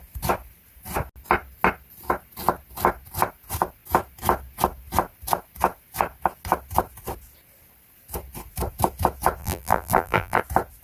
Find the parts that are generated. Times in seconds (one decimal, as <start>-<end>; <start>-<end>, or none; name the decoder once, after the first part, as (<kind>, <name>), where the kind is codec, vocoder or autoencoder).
9.4-10.4 (vocoder, BigVGAN v2)